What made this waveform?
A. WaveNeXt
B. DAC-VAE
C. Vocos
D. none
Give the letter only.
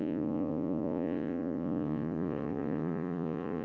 C